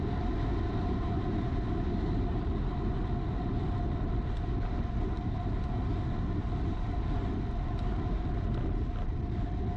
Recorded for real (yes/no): yes